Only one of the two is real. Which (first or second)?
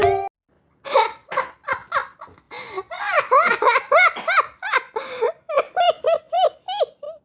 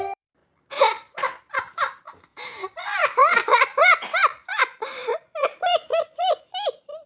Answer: first